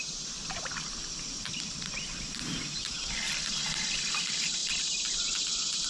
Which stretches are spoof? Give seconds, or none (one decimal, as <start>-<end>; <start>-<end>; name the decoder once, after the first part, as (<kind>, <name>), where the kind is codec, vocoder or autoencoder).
none

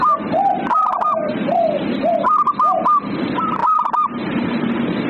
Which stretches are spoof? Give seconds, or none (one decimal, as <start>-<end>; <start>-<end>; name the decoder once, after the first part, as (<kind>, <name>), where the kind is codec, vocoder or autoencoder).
3.6-5.1 (vocoder, BigVGAN v2)

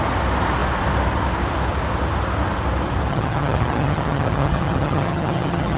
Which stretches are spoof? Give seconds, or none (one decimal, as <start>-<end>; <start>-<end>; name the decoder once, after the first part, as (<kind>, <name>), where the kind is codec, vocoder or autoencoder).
3.1-5.8 (vocoder, HiFi-GAN)

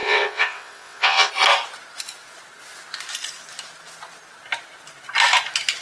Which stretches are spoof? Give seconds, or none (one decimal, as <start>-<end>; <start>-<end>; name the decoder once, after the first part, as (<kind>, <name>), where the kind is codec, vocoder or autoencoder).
0.0-1.3 (vocoder, WaveNeXt)

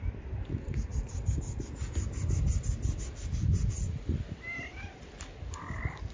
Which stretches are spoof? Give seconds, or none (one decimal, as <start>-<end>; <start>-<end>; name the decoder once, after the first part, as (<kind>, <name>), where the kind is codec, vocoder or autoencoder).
none

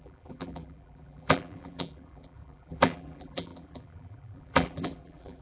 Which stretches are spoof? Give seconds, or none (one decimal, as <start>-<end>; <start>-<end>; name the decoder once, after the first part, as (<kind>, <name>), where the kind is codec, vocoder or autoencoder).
0.0-5.4 (vocoder, BigVGAN v2)